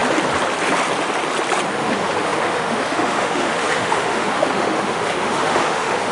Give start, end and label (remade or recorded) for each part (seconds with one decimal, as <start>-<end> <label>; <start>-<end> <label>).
0.0-1.7 recorded; 1.7-6.1 remade